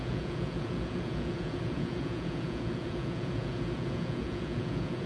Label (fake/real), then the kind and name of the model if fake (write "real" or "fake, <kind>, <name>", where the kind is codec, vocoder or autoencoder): fake, vocoder, Vocos